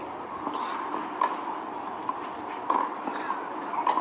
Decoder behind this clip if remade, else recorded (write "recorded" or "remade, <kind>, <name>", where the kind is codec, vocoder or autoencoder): recorded